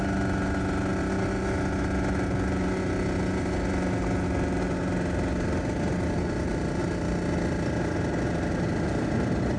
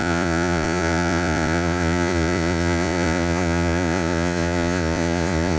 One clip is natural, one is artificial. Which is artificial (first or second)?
second